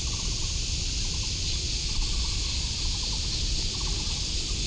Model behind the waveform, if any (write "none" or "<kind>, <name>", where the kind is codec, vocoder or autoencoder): none